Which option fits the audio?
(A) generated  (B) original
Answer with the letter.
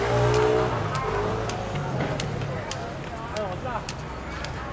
B